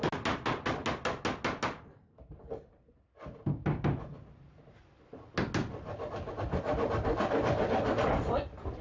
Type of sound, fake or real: real